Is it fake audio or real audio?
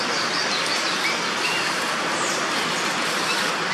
real